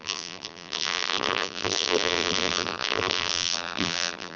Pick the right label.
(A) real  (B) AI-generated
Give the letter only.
B